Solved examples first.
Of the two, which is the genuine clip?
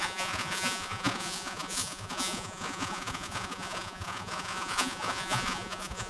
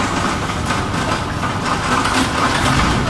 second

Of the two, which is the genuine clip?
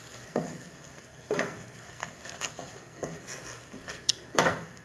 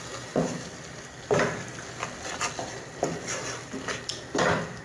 second